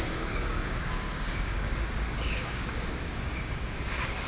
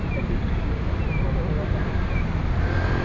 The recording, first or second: second